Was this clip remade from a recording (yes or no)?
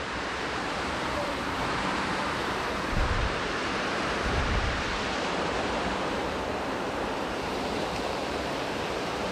yes